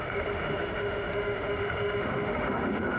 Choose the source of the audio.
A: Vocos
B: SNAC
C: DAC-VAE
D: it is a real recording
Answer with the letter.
C